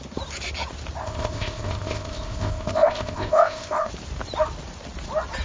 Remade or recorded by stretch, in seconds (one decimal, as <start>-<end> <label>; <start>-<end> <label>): 0.0-1.0 recorded; 1.0-3.9 remade; 3.9-5.4 recorded